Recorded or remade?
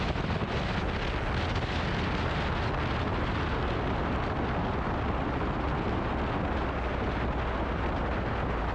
recorded